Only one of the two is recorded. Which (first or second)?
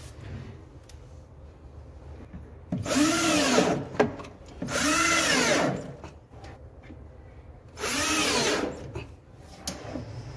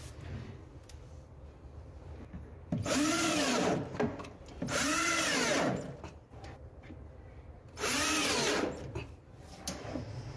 first